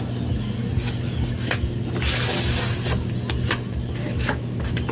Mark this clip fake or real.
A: real